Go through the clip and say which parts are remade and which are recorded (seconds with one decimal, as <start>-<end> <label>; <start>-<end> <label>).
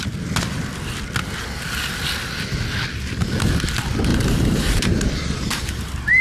0.0-4.1 recorded; 4.1-6.2 remade